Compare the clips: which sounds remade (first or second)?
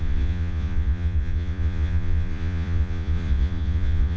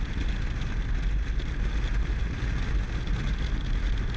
first